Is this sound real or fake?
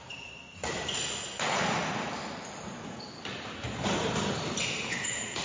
fake